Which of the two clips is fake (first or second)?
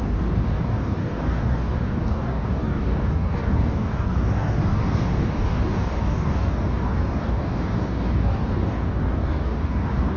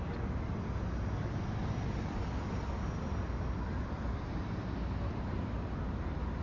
first